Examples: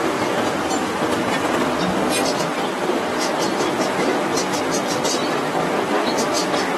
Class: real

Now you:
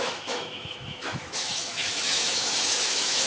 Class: fake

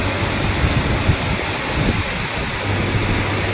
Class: real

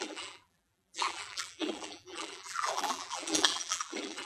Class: fake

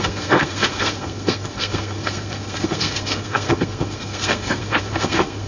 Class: fake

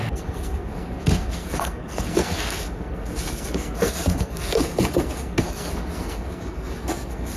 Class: fake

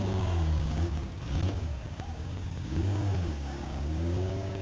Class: fake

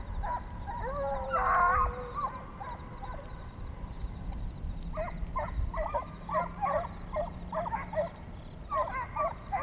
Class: real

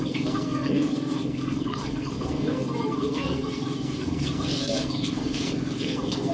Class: fake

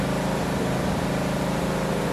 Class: real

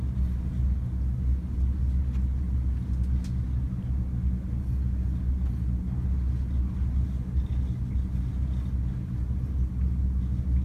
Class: real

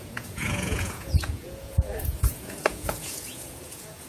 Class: fake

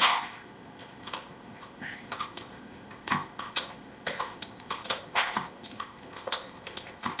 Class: fake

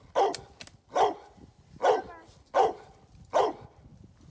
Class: real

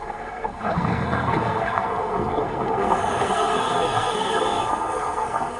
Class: fake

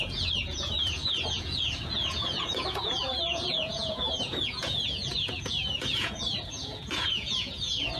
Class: fake